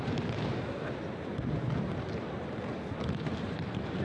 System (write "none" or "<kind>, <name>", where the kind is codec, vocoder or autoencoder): none